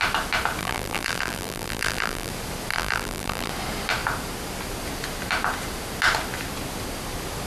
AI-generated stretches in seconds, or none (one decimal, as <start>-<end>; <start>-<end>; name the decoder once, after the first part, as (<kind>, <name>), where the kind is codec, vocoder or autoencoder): 0.6-2.3 (vocoder, BigVGAN v2); 2.7-3.5